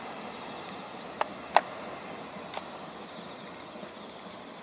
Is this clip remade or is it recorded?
recorded